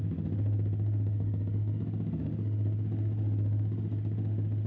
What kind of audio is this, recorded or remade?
remade